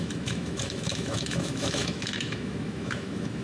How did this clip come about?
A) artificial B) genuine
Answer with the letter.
A